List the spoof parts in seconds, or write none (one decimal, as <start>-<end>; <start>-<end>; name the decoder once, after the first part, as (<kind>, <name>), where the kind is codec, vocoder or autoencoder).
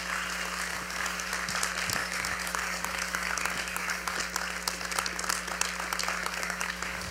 0.7-1.3 (codec, DAC); 2.0-4.2; 6.2-7.1